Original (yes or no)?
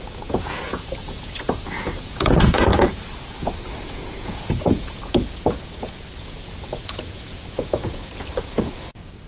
no